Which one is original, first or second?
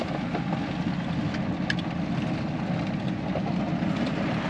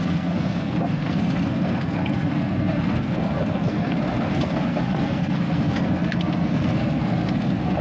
first